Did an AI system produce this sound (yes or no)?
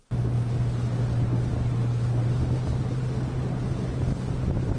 no